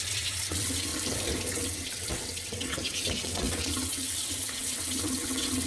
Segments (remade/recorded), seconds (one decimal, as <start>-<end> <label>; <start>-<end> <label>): 0.0-0.9 remade; 0.9-1.5 recorded; 1.5-5.7 remade